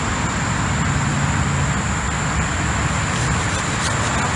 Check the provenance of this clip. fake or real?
real